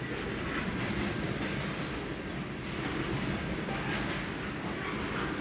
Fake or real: real